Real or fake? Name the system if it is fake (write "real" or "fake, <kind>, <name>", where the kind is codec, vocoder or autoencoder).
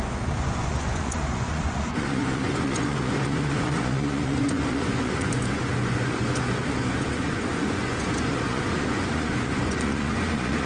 fake, vocoder, Vocos